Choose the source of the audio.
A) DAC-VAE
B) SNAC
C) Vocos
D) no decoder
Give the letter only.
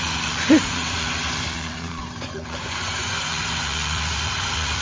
C